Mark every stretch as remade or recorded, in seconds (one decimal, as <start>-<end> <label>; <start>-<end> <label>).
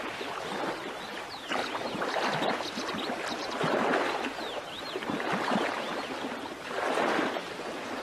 0.0-1.6 recorded; 1.6-4.8 remade; 4.8-8.0 recorded